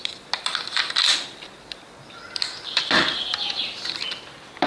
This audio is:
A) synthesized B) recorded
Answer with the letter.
B